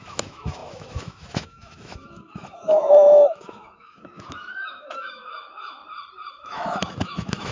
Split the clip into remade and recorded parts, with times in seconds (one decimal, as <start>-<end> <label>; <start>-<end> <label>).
0.0-5.8 remade; 5.8-6.3 recorded; 6.3-7.5 remade